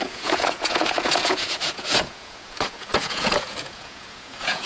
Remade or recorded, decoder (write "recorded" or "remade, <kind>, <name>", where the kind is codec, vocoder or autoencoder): remade, vocoder, Vocos